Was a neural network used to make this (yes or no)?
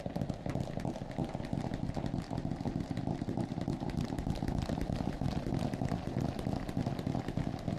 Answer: no